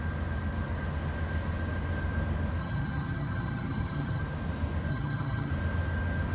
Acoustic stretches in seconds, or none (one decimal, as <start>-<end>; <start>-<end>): 0.0-2.6; 4.2-4.9; 5.5-6.3